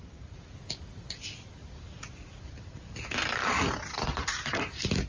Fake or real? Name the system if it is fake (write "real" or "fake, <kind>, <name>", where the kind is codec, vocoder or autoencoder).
real